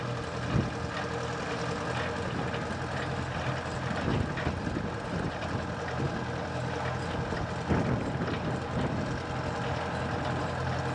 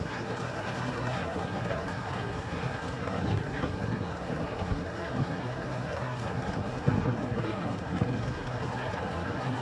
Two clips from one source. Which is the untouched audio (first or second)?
first